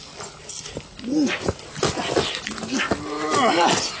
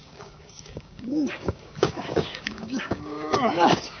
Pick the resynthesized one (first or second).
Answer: second